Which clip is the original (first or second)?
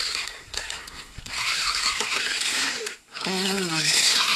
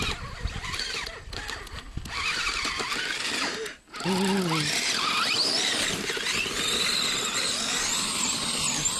second